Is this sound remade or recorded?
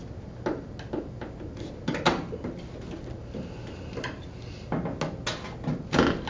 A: recorded